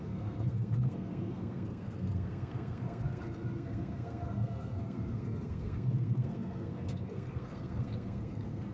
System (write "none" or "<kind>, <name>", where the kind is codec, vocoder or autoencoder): codec, SNAC